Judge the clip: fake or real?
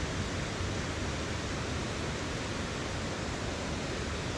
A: real